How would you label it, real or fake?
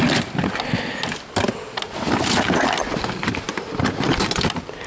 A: real